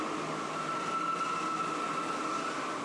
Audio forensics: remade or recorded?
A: recorded